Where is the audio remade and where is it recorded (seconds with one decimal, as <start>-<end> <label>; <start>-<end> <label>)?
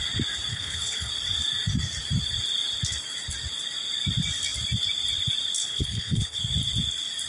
0.0-0.5 recorded; 0.5-1.1 remade; 1.1-5.6 recorded; 5.6-6.4 remade; 6.4-7.3 recorded